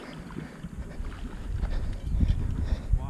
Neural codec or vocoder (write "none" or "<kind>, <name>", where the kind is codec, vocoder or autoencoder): none